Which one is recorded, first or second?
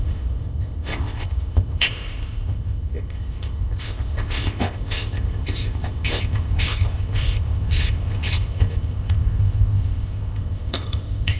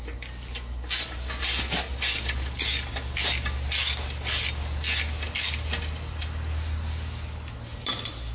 second